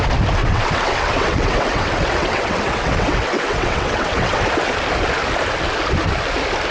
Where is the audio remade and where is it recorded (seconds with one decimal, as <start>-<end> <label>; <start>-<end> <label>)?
0.0-0.4 recorded; 0.4-4.4 remade; 4.4-6.7 recorded

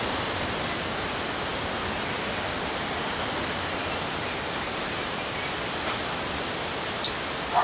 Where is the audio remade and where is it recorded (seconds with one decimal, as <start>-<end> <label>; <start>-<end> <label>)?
0.0-7.6 recorded

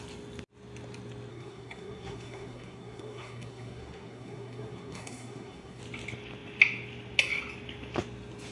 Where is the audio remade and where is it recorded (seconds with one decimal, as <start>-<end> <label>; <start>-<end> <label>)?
0.0-1.3 recorded; 1.3-5.8 remade; 5.8-8.5 recorded

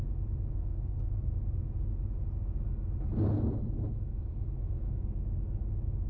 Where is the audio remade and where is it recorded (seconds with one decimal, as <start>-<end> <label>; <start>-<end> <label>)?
0.0-0.5 recorded; 0.5-1.3 remade; 1.3-6.1 recorded

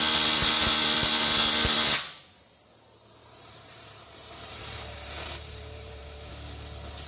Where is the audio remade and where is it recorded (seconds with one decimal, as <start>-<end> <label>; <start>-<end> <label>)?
0.0-3.2 recorded; 3.2-6.3 remade; 6.3-7.1 recorded

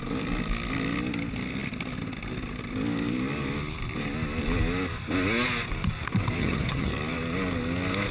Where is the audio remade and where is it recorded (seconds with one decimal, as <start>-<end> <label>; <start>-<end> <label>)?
0.0-6.4 recorded; 6.4-6.9 remade; 6.9-8.1 recorded